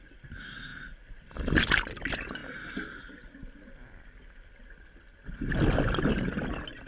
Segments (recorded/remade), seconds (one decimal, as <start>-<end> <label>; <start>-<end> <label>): 0.0-6.9 recorded